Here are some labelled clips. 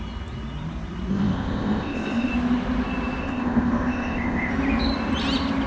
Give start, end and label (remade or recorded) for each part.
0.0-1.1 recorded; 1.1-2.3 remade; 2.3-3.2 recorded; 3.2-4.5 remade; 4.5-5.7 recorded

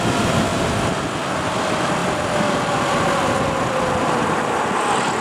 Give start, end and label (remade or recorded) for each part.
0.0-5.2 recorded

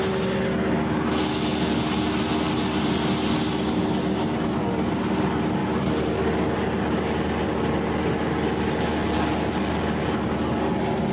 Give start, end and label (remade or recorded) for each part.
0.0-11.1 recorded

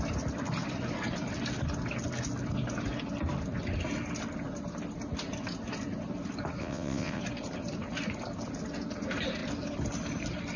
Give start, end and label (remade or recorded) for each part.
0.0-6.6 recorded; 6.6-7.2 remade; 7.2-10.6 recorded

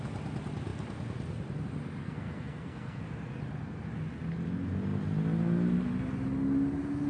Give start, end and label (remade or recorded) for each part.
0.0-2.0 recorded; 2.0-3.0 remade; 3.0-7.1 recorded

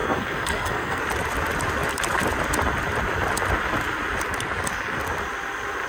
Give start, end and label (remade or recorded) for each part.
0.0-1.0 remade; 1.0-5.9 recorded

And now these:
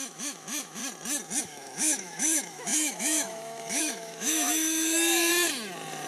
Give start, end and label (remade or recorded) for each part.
0.0-0.8 remade; 0.8-1.4 recorded; 1.4-5.3 remade; 5.3-6.1 recorded